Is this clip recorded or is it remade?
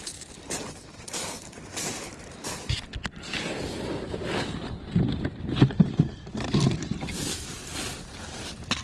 recorded